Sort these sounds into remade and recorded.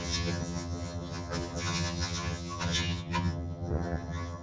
remade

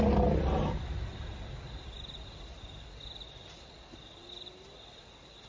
recorded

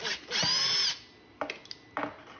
recorded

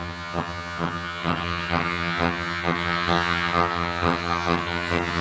remade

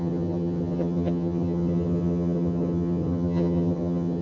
remade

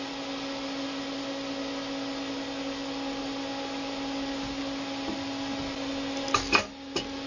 recorded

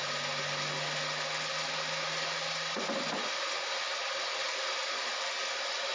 recorded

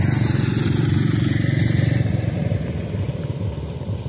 recorded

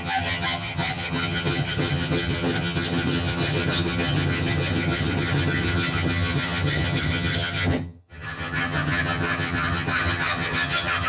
remade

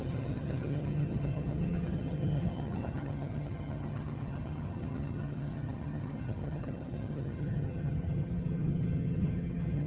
remade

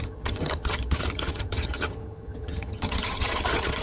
remade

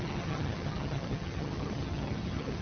remade